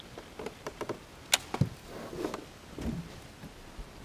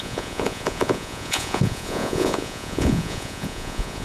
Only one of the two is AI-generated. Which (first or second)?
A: second